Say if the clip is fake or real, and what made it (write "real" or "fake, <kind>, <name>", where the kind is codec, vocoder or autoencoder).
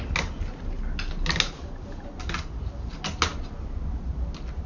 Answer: real